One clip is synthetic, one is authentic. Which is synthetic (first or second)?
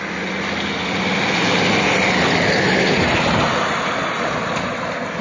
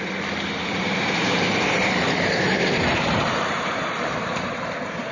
second